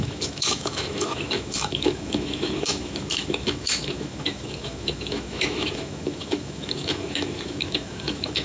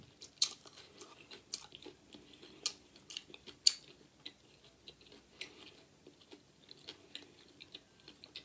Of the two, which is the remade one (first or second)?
first